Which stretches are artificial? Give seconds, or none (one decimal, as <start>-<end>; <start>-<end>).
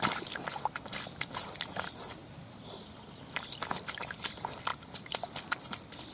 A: none